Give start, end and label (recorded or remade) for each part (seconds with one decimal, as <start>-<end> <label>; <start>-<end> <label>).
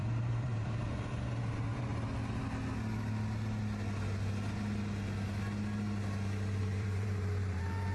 0.0-1.9 remade; 1.9-6.6 recorded; 6.6-7.9 remade